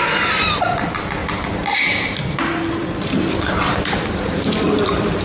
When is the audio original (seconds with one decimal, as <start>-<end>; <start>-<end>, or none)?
none